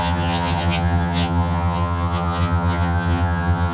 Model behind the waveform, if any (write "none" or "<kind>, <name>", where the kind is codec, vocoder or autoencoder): vocoder, HiFi-GAN